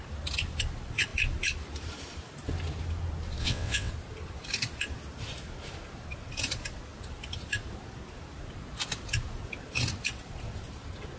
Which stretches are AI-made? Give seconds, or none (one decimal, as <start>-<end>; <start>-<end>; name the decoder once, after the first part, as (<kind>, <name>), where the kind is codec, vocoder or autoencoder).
3.4-3.9 (vocoder, WaveNeXt)